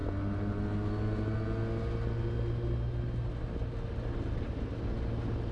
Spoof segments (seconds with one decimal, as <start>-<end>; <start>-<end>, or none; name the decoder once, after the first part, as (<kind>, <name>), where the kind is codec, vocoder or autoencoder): none